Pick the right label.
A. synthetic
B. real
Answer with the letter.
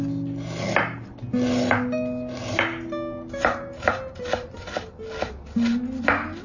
B